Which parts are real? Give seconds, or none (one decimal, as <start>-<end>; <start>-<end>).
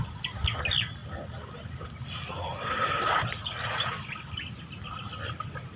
0.0-5.8